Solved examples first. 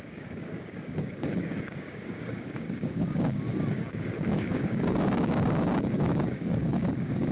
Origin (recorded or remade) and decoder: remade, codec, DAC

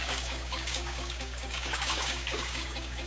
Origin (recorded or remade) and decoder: remade, codec, DAC